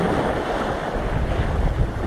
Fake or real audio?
real